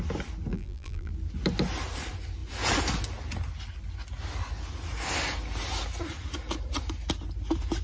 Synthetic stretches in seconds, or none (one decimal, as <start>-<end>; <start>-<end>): 0.5-1.1